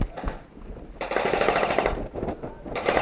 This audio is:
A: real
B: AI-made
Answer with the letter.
A